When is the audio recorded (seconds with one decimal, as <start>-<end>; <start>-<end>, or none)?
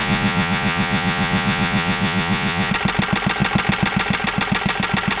2.7-5.2